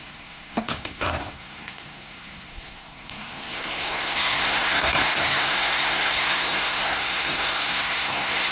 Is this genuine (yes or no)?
no